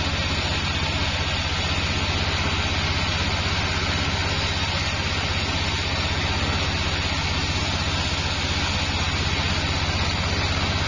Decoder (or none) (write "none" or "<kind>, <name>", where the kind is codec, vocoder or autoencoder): none